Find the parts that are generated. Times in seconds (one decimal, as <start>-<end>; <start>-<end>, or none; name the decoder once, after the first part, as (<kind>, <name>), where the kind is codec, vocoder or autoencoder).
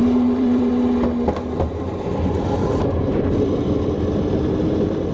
0.0-0.7 (vocoder, BigVGAN v2)